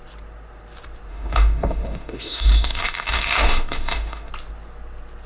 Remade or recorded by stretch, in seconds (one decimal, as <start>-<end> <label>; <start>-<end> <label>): 0.0-1.1 recorded; 1.1-4.3 remade; 4.3-5.3 recorded